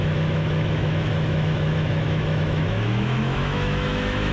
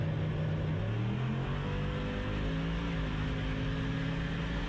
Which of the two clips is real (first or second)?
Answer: second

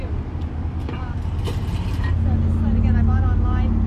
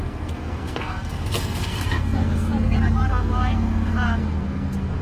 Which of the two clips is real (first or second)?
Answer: first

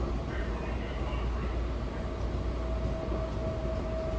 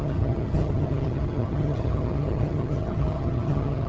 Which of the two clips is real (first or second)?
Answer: first